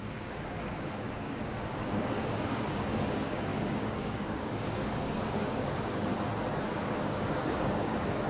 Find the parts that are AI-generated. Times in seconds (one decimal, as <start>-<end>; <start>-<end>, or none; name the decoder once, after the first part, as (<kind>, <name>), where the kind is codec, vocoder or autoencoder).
0.0-6.1 (codec, DAC); 6.7-8.3